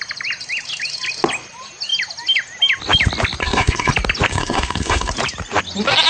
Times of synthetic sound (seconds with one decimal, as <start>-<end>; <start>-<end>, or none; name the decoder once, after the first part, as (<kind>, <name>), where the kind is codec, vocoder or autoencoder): 3.4-3.9 (codec, SNAC); 4.3-5.1